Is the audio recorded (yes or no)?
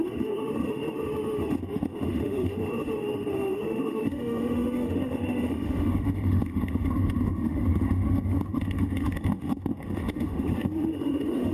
no